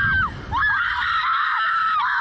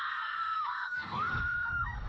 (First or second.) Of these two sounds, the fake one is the second